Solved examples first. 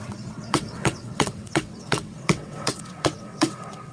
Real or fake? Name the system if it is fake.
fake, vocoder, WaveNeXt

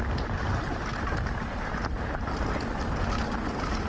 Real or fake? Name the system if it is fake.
real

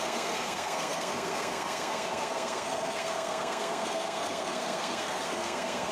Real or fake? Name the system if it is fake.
fake, codec, SNAC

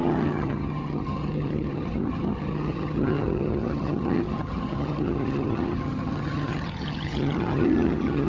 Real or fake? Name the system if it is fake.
fake, vocoder, HiFi-GAN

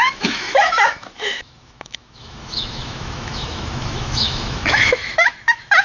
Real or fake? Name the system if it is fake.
fake, autoencoder, DAC-VAE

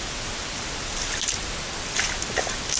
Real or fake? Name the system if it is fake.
real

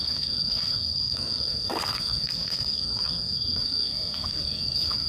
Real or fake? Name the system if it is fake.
fake, codec, SNAC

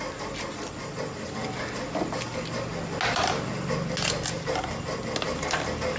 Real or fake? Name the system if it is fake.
real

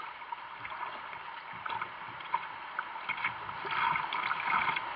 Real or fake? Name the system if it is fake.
real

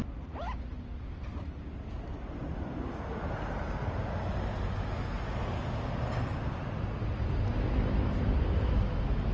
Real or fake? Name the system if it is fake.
real